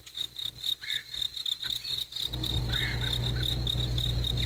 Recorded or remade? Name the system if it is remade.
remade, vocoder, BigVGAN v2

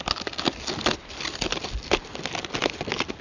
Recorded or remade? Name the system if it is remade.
recorded